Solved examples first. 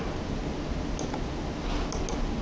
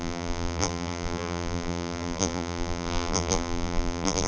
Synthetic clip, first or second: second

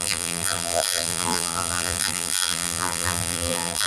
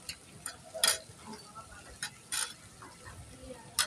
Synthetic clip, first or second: first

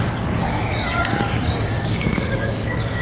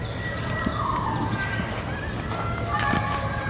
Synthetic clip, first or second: first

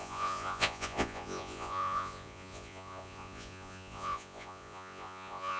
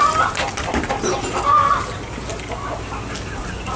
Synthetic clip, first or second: first